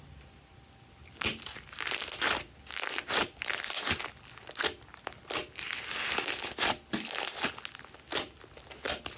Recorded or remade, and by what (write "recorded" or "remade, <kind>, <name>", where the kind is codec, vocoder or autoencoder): recorded